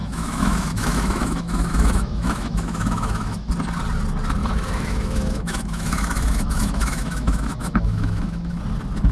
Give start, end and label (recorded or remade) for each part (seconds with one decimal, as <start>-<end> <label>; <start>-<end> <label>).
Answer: 0.0-3.5 remade; 3.5-4.4 recorded; 4.4-8.6 remade; 8.6-9.1 recorded